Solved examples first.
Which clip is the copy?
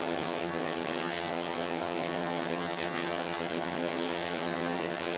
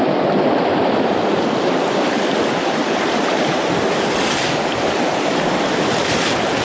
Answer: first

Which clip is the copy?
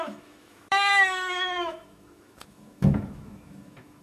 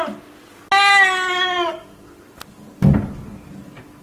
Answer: first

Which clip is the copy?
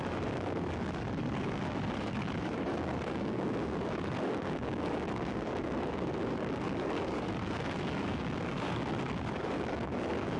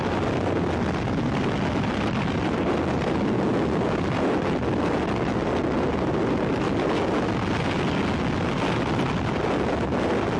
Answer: first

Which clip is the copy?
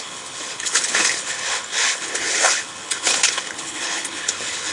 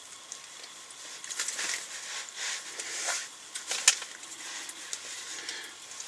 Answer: first